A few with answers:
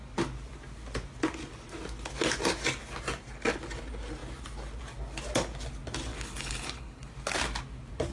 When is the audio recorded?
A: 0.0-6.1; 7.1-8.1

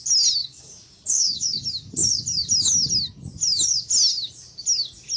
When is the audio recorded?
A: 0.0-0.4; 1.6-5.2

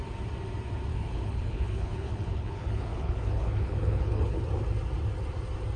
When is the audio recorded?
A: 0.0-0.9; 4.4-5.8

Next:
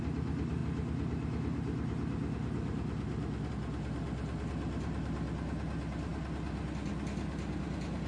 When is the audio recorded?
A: 0.0-8.1

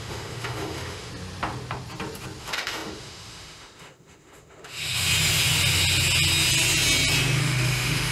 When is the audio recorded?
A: 1.1-2.4; 5.1-7.4